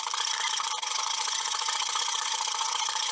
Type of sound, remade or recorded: remade